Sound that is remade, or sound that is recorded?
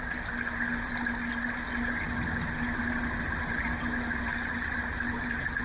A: recorded